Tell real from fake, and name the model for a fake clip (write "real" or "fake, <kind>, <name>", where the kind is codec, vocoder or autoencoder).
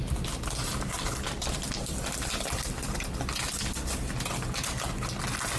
real